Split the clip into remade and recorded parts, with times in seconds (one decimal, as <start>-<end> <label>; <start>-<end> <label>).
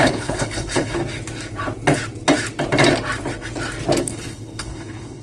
0.0-1.0 remade; 1.0-4.0 recorded; 4.0-5.2 remade